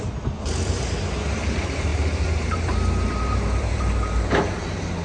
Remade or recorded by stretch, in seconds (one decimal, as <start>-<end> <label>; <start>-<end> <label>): 0.0-5.0 remade